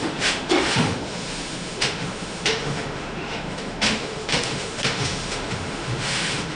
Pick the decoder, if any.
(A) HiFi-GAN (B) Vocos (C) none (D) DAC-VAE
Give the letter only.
D